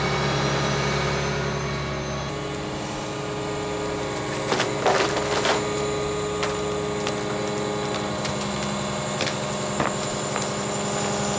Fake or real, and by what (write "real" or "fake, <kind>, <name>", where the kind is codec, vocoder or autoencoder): real